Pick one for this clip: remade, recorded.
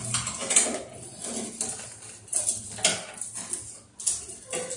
recorded